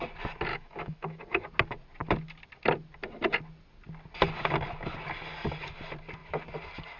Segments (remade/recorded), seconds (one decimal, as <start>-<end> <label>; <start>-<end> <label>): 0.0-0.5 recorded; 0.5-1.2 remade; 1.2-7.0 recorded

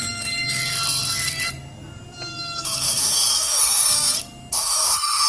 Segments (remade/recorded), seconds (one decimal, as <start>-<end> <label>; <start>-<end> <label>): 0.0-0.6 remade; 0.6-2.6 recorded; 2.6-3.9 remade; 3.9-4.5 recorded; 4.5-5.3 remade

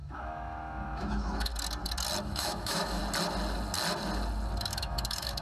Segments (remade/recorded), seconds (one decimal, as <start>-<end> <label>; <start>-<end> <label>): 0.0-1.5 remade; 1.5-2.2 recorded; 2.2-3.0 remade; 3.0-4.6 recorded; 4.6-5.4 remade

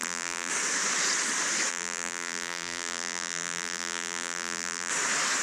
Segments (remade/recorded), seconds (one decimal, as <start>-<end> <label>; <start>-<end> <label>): 0.0-0.5 remade; 0.5-1.7 recorded; 1.7-4.9 remade; 4.9-5.4 recorded

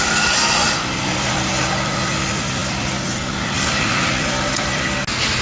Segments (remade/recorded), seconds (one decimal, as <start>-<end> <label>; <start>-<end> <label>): 0.0-5.4 recorded

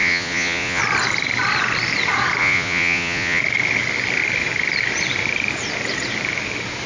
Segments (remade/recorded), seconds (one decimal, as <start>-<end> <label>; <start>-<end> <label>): 0.0-0.8 remade; 0.8-2.4 recorded; 2.4-3.4 remade; 3.4-6.9 recorded

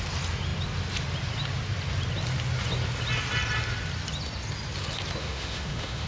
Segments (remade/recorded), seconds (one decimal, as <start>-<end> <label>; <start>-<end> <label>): 0.0-5.2 recorded; 5.2-6.1 remade

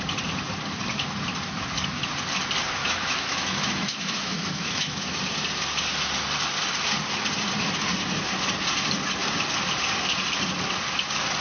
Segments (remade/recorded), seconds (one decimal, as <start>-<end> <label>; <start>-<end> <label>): 0.0-2.8 recorded; 2.8-5.2 remade; 5.2-11.4 recorded